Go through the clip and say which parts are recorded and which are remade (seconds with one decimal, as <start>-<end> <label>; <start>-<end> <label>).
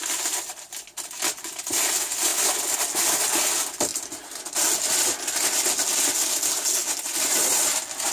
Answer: 0.0-8.1 recorded